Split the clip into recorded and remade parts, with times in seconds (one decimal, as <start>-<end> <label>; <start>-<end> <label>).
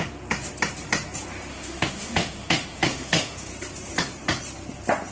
0.0-1.5 recorded; 1.5-3.5 remade; 3.5-5.1 recorded